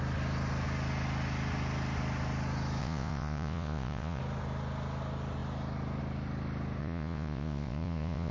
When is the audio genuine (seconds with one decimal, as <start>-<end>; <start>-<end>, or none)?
0.0-2.8; 4.2-6.8